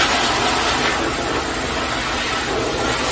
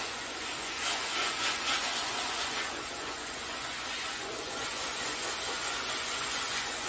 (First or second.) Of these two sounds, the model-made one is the second